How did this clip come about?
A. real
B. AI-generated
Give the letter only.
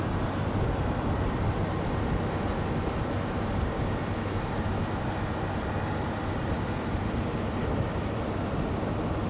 A